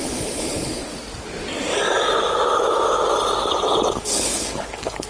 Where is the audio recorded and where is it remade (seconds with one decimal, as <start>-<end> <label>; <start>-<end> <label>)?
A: 0.0-0.8 remade; 0.8-3.9 recorded; 3.9-5.1 remade